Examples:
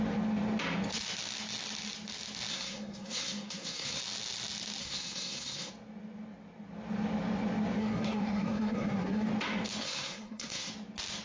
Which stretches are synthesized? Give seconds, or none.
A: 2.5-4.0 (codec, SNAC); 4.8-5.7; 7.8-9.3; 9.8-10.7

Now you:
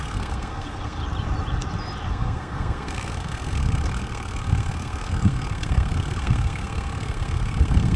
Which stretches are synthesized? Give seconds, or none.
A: 0.0-1.0 (codec, SNAC); 2.1-8.0

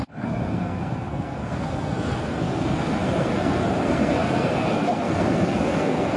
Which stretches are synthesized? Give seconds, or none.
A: 0.0-6.2 (codec, SNAC)

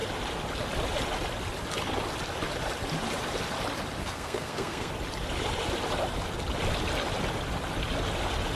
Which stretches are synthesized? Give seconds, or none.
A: 4.0-4.9 (codec, SNAC)

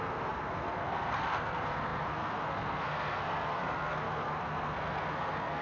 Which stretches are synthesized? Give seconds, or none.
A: 0.0-5.6 (codec, SNAC)